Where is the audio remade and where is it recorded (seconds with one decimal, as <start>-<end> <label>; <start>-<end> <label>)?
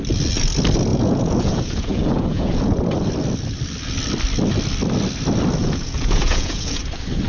0.0-0.9 recorded; 0.9-2.8 remade; 2.8-5.6 recorded; 5.6-6.8 remade; 6.8-7.3 recorded